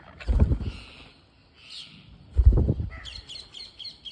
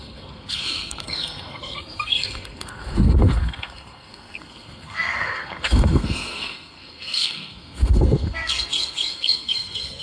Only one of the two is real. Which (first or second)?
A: first